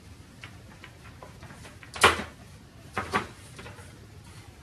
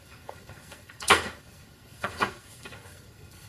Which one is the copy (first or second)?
second